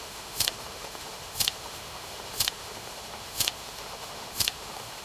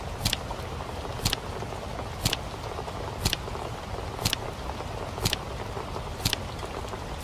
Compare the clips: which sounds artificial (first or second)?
first